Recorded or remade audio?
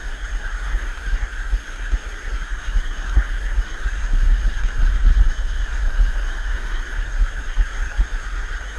remade